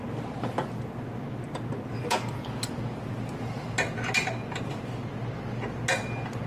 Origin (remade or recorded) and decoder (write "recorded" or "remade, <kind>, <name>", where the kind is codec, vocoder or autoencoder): recorded